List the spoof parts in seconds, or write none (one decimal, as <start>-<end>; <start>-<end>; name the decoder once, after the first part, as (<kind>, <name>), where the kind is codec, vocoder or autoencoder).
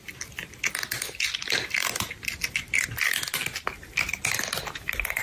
none